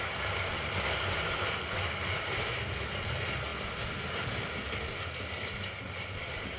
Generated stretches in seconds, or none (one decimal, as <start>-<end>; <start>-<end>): none